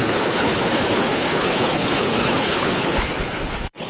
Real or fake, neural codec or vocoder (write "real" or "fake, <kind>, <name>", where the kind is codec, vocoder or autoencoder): fake, codec, HILCodec